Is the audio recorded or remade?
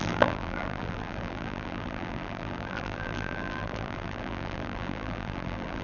remade